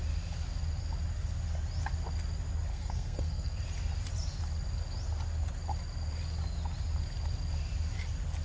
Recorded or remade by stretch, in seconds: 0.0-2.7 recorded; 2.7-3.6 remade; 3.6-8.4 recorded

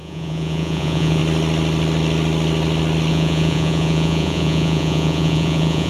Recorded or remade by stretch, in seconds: 0.0-1.2 remade; 1.2-3.1 recorded; 3.1-5.9 remade

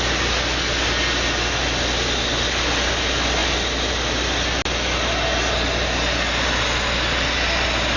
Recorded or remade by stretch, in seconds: 0.0-8.0 recorded

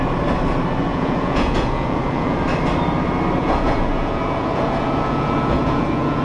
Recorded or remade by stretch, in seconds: 0.0-0.9 recorded; 0.9-2.4 remade; 2.4-3.4 recorded; 3.4-6.2 remade

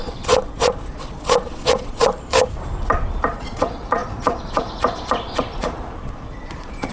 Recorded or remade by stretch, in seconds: 0.0-2.1 remade; 2.1-3.1 recorded; 3.1-6.9 remade

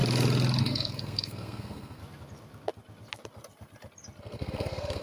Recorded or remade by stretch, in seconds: 0.0-0.6 recorded; 0.6-2.0 remade; 2.0-4.2 recorded; 4.2-5.0 remade

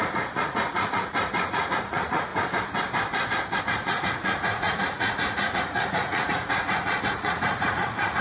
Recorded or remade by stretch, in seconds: 0.0-2.3 remade; 2.3-3.6 recorded; 3.6-8.2 remade